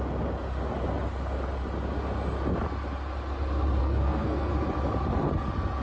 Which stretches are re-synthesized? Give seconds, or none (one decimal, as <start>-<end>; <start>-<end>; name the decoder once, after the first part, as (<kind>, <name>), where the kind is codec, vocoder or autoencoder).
3.8-4.5 (codec, SNAC)